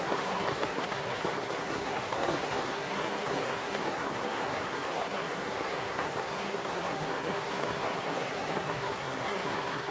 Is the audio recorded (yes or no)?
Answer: no